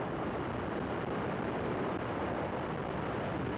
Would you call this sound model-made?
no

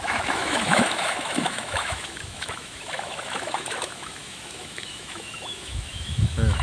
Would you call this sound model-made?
yes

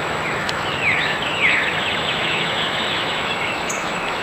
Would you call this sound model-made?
yes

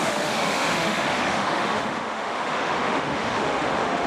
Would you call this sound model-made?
yes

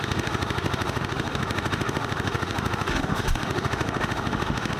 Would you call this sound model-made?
yes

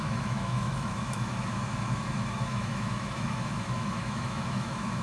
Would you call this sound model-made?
yes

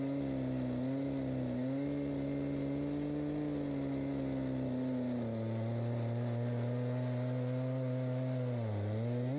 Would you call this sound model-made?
no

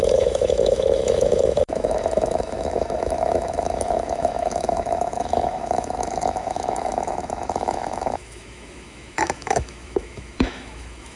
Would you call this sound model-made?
yes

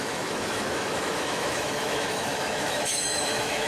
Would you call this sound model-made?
yes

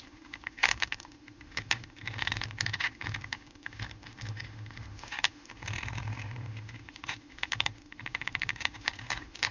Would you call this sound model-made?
yes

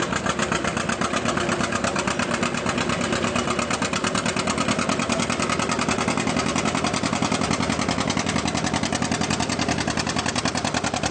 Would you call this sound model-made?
no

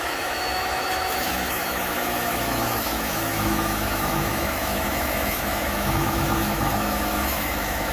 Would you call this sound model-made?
yes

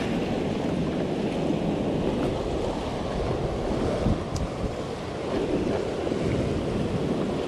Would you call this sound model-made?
no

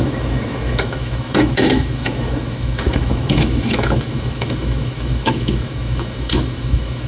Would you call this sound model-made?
yes